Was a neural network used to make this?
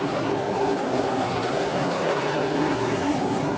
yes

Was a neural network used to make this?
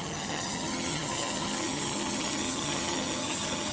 yes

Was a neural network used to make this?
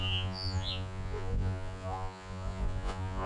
yes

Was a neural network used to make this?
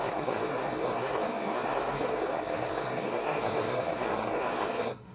yes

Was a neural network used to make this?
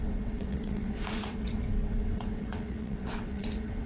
yes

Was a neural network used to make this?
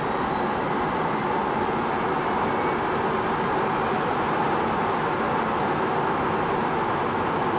no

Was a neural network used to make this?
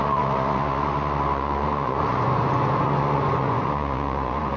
yes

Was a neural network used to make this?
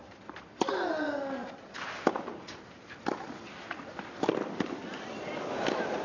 no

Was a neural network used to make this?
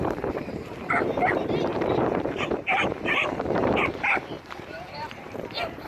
yes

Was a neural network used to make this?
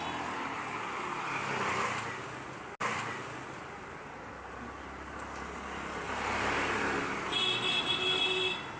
no